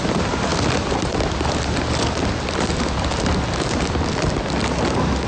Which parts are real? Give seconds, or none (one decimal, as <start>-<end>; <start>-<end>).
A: 0.0-5.3